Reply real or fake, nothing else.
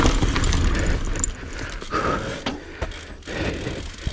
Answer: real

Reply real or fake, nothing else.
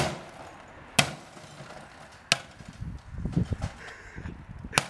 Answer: real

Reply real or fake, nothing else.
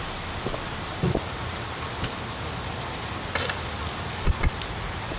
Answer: real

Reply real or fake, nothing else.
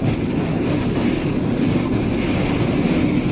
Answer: real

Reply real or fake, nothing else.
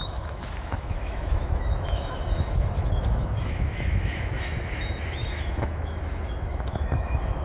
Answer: fake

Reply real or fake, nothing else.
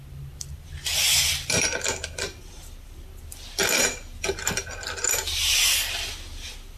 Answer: real